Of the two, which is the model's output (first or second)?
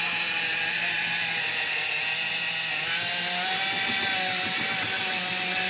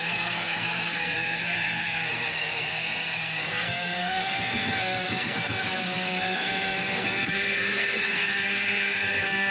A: second